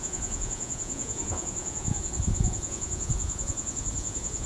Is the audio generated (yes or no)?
yes